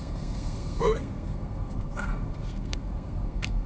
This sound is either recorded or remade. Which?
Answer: remade